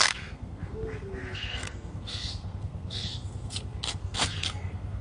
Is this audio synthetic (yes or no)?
yes